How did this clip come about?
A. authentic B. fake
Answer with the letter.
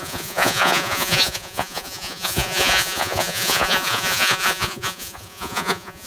B